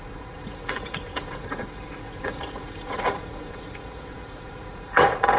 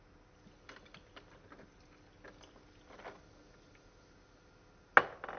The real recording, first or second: second